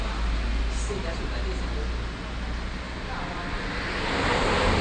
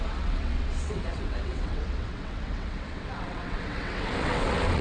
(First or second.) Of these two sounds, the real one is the first